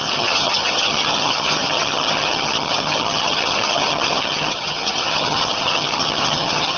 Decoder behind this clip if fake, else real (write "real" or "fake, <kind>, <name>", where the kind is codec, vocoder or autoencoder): fake, vocoder, HiFi-GAN